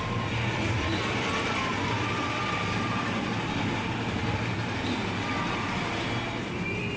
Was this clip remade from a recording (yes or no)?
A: no